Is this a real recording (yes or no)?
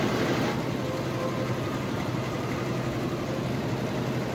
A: yes